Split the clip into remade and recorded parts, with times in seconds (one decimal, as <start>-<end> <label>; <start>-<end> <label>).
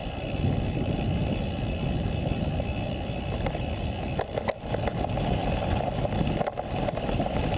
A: 0.0-7.6 recorded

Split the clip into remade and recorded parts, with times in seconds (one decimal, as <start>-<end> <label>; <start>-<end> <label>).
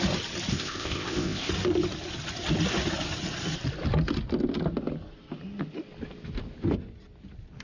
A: 0.0-0.5 recorded; 0.5-1.5 remade; 1.5-7.6 recorded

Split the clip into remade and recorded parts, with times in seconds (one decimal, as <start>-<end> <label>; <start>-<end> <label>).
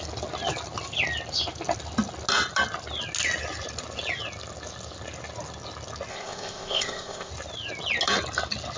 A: 0.0-6.1 recorded; 6.1-7.3 remade; 7.3-8.8 recorded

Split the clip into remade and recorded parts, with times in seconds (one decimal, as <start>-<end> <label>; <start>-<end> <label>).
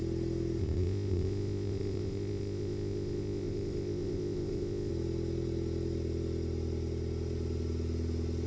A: 0.0-0.6 recorded; 0.6-4.9 remade; 4.9-8.5 recorded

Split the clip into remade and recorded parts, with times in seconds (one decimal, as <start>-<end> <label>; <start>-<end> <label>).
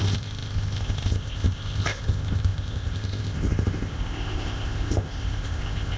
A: 0.0-6.0 remade